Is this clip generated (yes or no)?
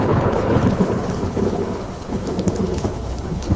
yes